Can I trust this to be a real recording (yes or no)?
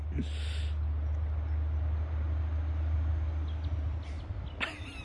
yes